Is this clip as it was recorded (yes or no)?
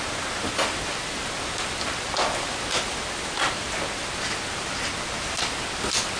yes